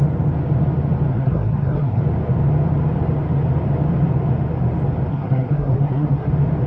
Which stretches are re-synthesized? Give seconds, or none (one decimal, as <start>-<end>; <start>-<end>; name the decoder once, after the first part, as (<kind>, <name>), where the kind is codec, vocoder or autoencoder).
1.1-2.0 (codec, SNAC); 5.1-6.3